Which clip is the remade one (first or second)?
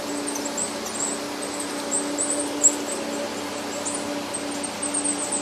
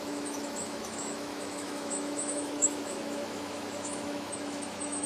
second